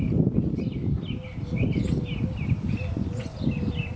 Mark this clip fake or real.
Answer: real